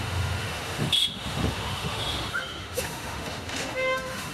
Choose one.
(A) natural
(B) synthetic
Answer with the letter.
B